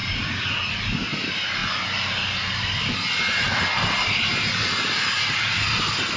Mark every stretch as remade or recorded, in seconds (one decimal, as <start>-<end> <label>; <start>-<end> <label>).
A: 0.0-6.2 recorded